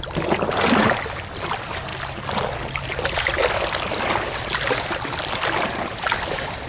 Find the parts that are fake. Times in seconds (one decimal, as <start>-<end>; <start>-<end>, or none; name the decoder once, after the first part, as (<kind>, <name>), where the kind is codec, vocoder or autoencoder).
none